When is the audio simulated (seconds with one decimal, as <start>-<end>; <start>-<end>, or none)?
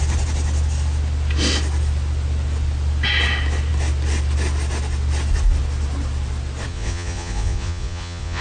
6.7-8.4